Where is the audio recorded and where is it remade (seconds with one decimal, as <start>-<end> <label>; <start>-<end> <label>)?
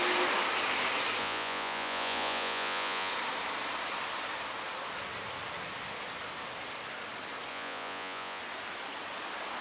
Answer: 0.0-1.2 recorded; 1.2-3.1 remade; 3.1-7.5 recorded; 7.5-8.4 remade; 8.4-9.6 recorded